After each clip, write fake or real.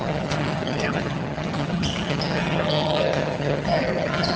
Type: fake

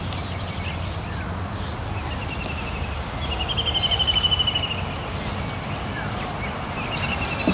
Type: real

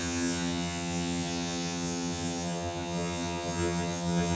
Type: fake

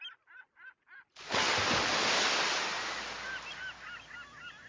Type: real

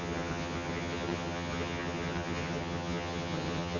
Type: fake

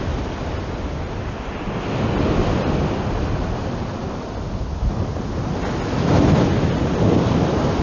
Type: real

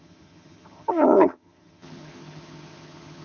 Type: fake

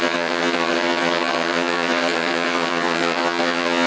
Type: fake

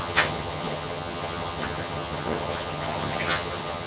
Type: fake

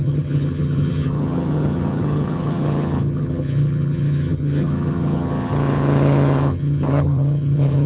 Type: fake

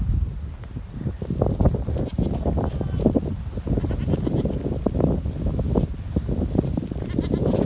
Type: real